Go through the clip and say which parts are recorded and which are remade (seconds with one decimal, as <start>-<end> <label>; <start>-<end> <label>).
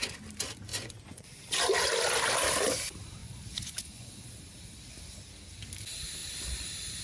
0.0-0.7 recorded; 0.7-1.4 remade; 1.4-3.2 recorded; 3.2-4.3 remade; 4.3-7.0 recorded